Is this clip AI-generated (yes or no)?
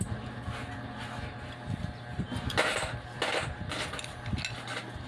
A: no